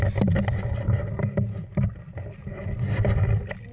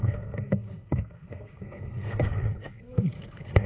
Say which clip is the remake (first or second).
second